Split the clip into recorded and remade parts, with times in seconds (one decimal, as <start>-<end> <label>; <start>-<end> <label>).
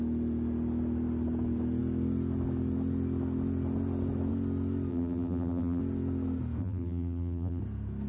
0.0-4.9 recorded; 4.9-5.8 remade; 5.8-6.6 recorded; 6.6-7.6 remade; 7.6-8.1 recorded